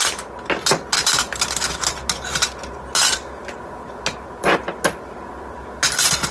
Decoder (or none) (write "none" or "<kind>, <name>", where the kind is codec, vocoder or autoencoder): none